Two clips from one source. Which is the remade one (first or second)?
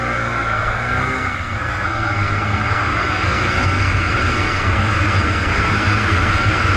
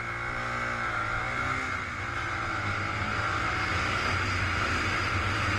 first